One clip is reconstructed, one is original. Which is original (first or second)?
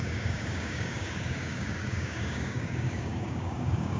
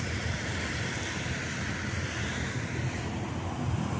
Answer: second